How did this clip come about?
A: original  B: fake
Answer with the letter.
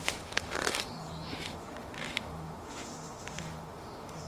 B